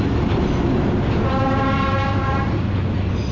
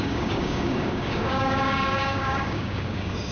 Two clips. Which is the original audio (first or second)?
first